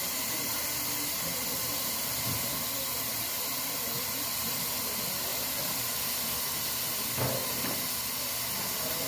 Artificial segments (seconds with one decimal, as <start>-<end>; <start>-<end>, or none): 1.5-2.3